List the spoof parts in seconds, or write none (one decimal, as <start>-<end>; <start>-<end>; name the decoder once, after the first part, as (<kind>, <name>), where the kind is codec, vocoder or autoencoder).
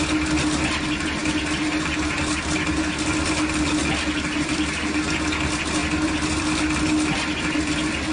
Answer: 5.8-6.4 (vocoder, BigVGAN v2)